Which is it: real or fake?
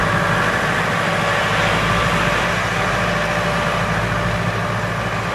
real